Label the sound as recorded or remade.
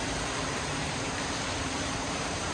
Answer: remade